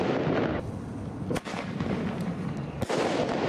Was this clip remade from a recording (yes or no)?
no